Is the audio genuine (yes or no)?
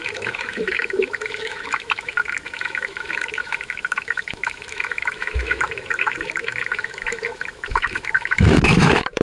no